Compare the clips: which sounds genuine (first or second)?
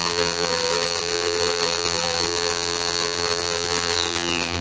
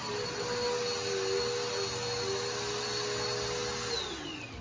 second